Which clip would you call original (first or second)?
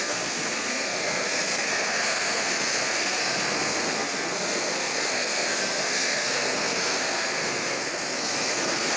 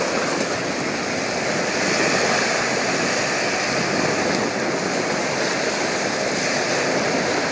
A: second